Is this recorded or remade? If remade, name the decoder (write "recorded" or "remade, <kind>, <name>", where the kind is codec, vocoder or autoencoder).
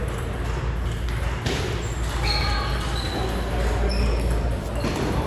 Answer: recorded